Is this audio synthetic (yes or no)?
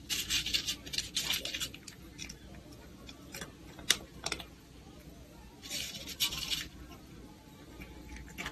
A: no